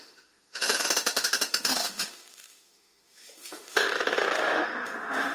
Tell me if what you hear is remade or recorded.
remade